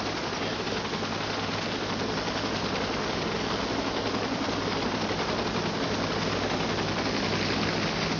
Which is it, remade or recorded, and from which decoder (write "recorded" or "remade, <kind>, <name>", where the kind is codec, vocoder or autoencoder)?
recorded